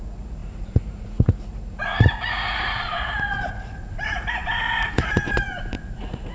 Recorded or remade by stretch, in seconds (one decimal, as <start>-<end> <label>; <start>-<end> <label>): 0.0-6.3 remade